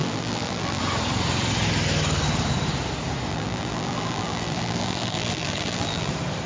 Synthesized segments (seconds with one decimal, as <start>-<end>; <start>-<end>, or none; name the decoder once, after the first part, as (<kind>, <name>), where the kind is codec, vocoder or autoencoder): 0.0-0.8 (vocoder, BigVGAN v2); 3.3-6.1